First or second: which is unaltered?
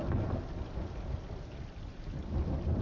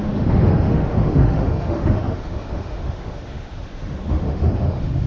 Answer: first